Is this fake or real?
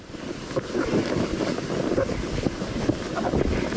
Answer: real